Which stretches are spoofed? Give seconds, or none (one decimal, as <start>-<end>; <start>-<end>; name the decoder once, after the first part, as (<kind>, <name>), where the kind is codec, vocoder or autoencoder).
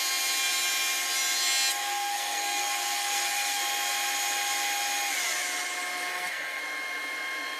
1.8-3.6 (codec, SNAC); 6.1-6.6